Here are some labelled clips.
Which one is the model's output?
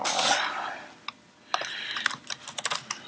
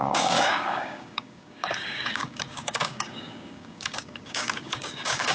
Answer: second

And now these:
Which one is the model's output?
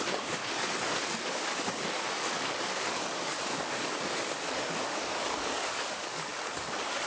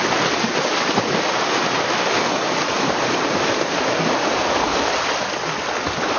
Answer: first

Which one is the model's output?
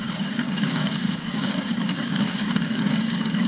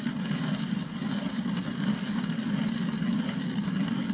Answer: first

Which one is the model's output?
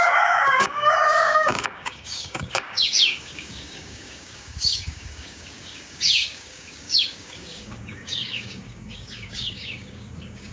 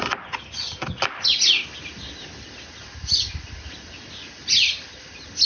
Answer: first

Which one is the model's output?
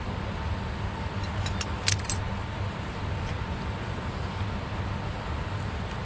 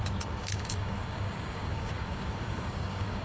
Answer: second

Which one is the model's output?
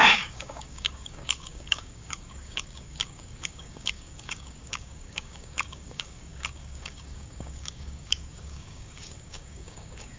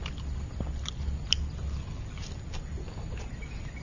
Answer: first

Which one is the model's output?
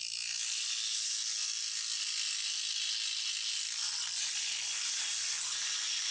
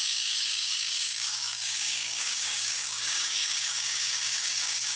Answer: second